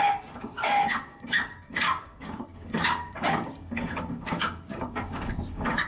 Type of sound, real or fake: fake